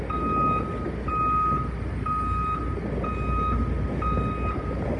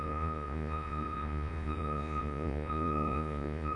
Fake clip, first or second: second